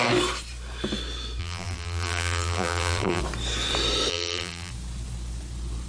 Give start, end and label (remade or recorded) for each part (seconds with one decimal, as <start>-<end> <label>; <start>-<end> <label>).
0.0-1.4 recorded; 1.4-3.2 remade; 3.2-4.1 recorded; 4.1-4.7 remade; 4.7-5.9 recorded

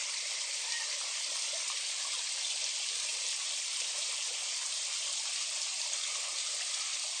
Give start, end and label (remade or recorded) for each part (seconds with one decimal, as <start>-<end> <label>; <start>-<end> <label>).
0.0-7.2 recorded

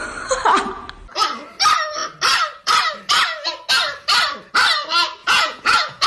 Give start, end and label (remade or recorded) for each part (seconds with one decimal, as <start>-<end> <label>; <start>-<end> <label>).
0.0-5.2 recorded; 5.2-6.1 remade

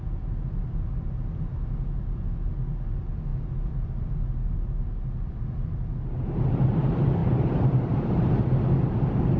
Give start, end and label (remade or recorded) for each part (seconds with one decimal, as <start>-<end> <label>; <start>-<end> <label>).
0.0-7.2 recorded; 7.2-8.3 remade; 8.3-9.4 recorded

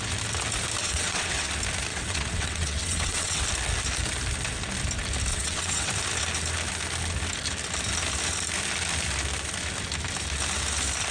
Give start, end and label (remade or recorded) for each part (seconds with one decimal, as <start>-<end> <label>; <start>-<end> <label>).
0.0-0.8 recorded; 0.8-1.5 remade; 1.5-1.9 recorded; 1.9-3.4 remade; 3.4-5.3 recorded; 5.3-5.9 remade; 5.9-11.1 recorded

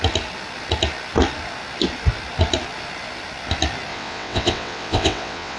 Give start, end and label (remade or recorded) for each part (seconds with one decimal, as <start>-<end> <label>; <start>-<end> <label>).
0.0-3.9 recorded; 3.9-5.6 remade

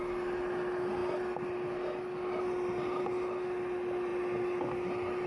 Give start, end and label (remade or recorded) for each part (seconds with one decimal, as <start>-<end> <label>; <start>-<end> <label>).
0.0-5.3 recorded